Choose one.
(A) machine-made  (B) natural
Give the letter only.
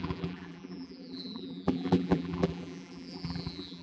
A